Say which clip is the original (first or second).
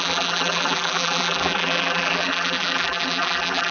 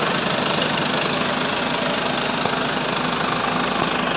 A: second